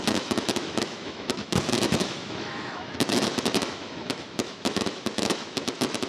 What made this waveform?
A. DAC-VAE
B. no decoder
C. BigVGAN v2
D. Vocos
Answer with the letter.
A